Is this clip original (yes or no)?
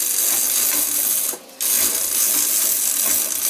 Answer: yes